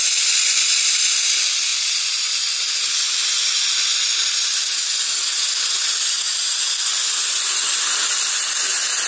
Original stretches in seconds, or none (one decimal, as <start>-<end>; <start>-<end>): 0.0-7.3; 8.3-9.1